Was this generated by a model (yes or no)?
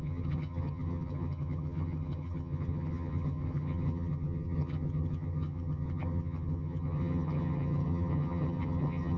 yes